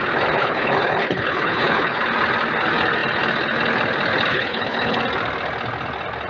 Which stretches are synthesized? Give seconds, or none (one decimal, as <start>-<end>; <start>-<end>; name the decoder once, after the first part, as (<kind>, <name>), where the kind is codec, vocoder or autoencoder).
0.4-2.0 (codec, HILCodec); 4.3-5.0